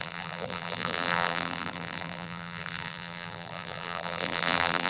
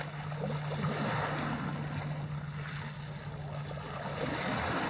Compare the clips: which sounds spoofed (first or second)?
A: first